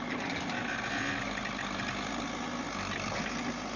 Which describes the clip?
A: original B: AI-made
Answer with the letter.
A